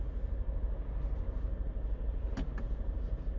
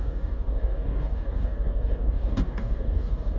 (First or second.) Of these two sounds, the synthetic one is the second